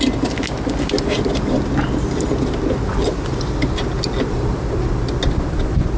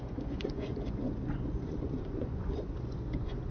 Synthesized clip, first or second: second